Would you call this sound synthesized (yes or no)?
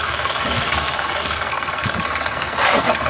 yes